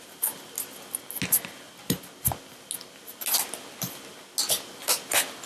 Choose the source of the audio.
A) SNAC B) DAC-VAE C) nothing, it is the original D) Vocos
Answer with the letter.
C